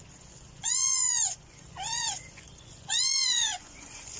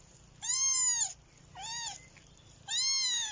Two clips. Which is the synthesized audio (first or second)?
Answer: first